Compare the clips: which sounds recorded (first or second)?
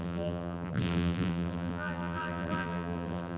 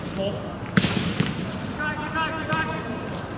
second